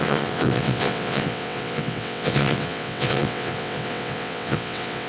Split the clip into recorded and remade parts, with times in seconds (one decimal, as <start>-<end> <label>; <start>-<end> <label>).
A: 0.0-5.1 remade